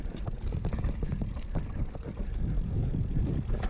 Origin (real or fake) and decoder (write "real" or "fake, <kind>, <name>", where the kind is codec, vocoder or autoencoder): real